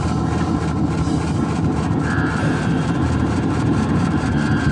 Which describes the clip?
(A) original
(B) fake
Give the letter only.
B